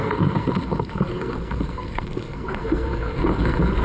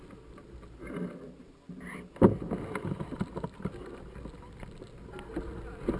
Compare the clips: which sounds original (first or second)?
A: second